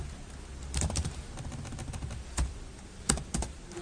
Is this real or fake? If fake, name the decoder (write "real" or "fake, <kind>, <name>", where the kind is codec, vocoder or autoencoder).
real